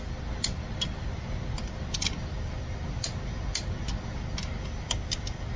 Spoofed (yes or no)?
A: no